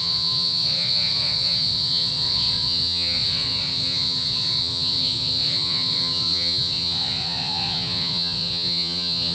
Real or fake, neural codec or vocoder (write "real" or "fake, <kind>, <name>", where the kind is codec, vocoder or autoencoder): fake, vocoder, Vocos